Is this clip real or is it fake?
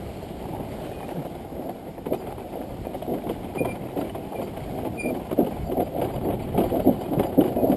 real